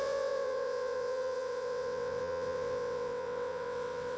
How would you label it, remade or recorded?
remade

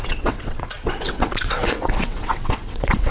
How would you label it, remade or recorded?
remade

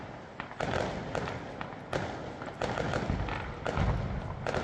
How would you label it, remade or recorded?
recorded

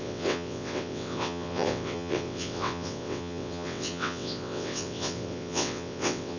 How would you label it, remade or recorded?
remade